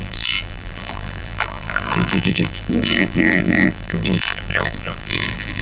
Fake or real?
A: fake